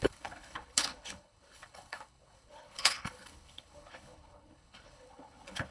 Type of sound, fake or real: fake